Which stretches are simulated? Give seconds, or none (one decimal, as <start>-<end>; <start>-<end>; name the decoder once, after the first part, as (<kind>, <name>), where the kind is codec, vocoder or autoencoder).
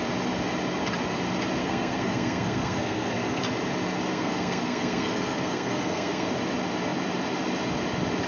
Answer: 1.6-3.4 (codec, SNAC); 4.1-6.3